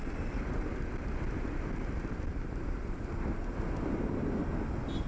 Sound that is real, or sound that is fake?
real